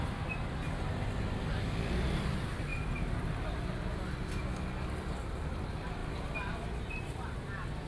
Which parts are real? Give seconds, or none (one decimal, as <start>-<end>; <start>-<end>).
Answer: 0.0-7.9